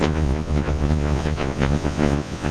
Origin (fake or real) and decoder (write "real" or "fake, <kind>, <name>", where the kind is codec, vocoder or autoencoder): fake, vocoder, Vocos